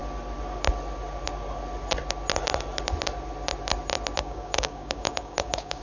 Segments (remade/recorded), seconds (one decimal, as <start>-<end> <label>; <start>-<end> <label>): 0.0-4.2 recorded; 4.2-5.8 remade

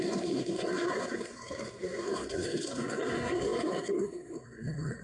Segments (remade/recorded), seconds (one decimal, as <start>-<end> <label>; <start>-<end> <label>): 0.0-5.0 remade